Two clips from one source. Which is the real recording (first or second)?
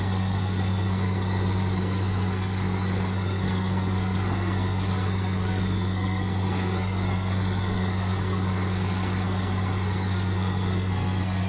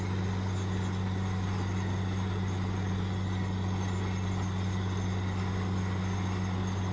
second